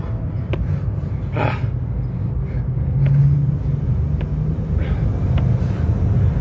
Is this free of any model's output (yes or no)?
yes